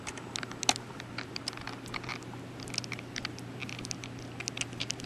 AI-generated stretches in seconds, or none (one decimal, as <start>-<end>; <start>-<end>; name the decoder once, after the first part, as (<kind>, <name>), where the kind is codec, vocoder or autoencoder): none